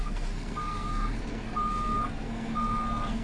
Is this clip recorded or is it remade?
remade